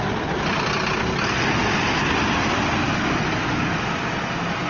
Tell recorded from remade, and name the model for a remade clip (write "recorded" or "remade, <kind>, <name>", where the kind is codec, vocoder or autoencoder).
recorded